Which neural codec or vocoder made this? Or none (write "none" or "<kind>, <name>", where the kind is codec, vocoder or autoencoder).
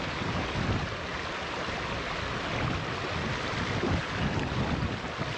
none